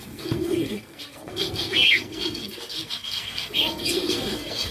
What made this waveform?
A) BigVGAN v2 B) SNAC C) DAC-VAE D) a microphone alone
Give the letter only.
B